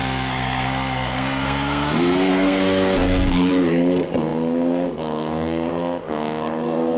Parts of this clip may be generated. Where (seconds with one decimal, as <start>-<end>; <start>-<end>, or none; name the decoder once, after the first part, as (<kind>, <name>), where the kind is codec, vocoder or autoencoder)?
0.0-7.0 (codec, SNAC)